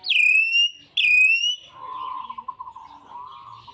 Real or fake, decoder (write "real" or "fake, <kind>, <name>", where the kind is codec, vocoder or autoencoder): real